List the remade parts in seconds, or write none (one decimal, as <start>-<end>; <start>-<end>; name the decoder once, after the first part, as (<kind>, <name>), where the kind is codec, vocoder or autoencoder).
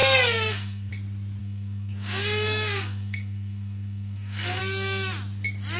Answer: 0.0-0.9 (codec, SNAC); 1.4-4.6